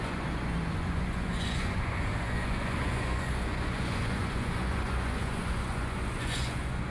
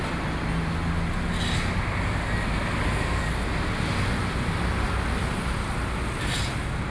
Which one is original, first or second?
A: second